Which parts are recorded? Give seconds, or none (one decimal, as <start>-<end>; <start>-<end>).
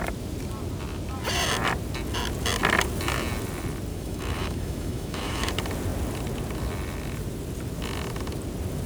0.0-3.9; 5.5-8.9